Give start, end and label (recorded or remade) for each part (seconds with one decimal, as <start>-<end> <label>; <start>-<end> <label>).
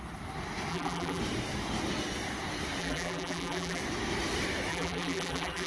0.0-0.7 recorded; 0.7-1.2 remade; 1.2-2.8 recorded; 2.8-3.8 remade; 3.8-4.7 recorded; 4.7-5.7 remade